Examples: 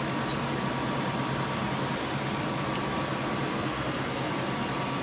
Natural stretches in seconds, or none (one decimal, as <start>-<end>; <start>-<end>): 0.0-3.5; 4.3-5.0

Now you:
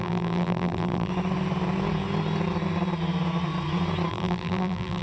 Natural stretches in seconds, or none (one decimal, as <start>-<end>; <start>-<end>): 1.1-4.1

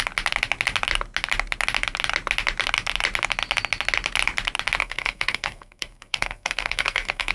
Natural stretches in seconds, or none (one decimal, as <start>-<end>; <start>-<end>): 0.0-4.8

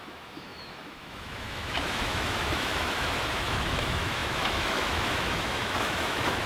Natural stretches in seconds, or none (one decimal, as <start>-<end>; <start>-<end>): none